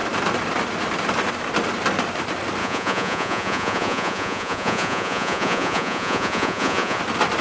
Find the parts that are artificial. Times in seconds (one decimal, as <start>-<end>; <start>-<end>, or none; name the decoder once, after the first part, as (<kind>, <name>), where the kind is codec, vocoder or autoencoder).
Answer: 2.6-7.0 (vocoder, Vocos)